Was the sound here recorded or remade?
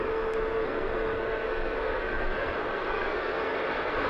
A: remade